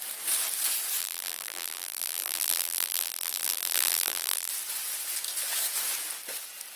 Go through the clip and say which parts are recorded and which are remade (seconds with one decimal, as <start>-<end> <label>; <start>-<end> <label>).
0.0-1.0 recorded; 1.0-4.5 remade; 4.5-6.8 recorded